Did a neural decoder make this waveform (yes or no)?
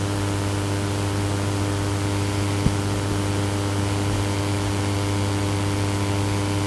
yes